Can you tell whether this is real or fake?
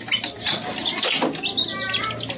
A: real